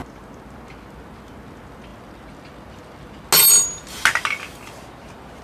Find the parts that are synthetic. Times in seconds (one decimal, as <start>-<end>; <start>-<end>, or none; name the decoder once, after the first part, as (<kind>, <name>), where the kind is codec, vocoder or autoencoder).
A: none